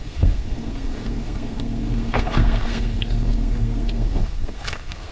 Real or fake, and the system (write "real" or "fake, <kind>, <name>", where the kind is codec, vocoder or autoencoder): fake, codec, SNAC